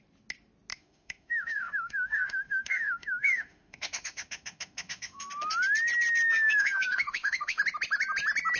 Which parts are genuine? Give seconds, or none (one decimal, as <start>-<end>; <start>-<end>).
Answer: 0.0-0.7; 5.3-6.3; 7.6-8.6